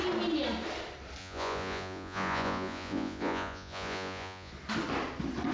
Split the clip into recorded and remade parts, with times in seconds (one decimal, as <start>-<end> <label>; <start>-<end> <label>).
0.0-1.2 recorded; 1.2-4.5 remade; 4.5-5.5 recorded